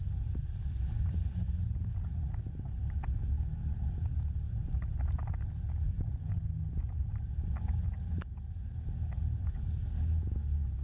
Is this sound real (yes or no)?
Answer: yes